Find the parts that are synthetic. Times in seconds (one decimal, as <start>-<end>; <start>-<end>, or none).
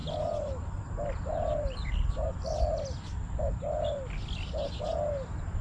none